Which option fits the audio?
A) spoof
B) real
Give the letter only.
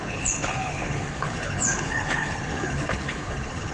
A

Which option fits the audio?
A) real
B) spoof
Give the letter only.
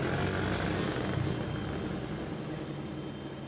A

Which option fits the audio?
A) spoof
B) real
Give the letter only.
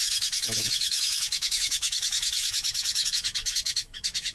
A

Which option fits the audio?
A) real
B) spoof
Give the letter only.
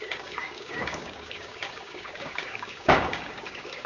B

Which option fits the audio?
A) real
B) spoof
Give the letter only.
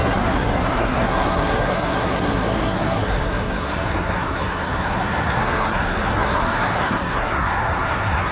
B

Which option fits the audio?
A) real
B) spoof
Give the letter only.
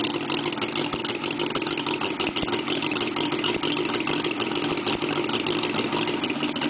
A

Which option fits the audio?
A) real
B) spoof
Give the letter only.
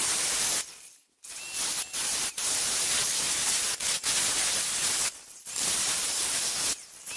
A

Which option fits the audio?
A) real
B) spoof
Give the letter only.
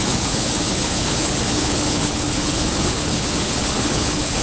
B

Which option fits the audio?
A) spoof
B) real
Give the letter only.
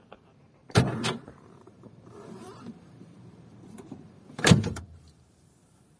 A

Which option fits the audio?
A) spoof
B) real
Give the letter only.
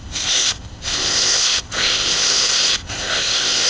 A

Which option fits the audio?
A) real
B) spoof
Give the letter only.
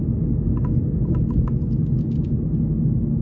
A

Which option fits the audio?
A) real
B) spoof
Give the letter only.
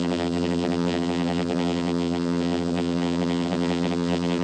B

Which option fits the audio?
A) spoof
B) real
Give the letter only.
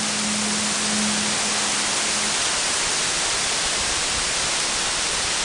B